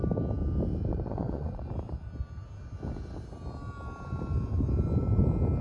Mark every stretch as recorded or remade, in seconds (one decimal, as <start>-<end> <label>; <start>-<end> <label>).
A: 0.0-0.9 recorded; 0.9-1.7 remade; 1.7-5.6 recorded